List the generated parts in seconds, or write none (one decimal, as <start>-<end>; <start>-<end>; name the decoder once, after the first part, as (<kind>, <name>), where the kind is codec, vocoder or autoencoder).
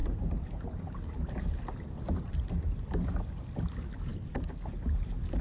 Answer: 0.0-3.2 (vocoder, BigVGAN v2)